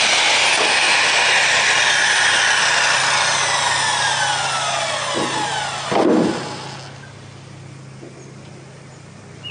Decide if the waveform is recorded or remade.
recorded